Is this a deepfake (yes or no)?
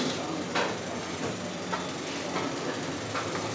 no